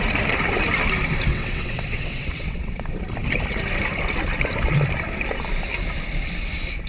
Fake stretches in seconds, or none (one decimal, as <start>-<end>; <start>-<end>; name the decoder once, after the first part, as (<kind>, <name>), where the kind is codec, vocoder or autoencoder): 1.3-2.8 (vocoder, WaveNeXt)